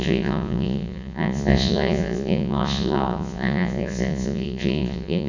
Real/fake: fake